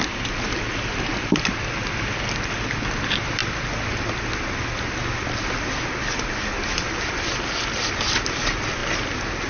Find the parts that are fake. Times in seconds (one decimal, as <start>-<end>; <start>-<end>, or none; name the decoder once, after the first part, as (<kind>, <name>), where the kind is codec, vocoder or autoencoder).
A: none